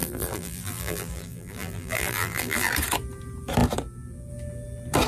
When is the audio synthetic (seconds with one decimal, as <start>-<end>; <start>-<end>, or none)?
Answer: 0.0-2.7